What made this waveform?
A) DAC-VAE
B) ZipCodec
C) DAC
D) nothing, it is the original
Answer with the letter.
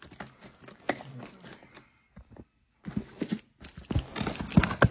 D